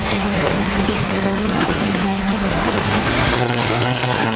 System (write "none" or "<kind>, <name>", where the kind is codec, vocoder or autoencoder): codec, SNAC